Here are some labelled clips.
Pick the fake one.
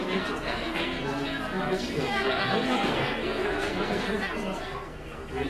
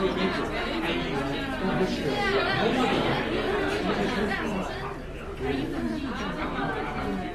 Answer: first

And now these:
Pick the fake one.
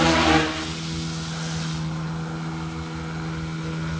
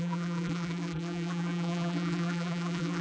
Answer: second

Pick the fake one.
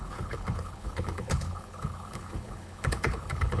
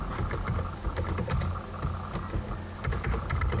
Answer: first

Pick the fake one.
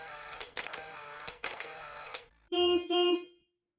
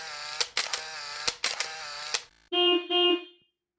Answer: first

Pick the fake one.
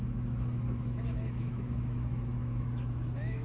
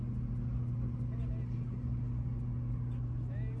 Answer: first